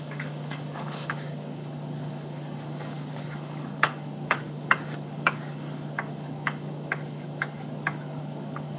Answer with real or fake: fake